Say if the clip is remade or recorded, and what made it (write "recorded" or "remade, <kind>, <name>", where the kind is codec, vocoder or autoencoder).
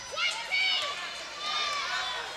recorded